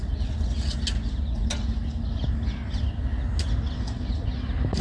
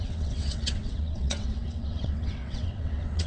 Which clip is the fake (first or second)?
second